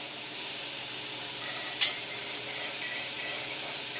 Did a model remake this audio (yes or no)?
yes